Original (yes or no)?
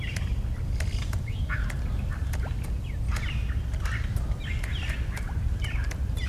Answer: yes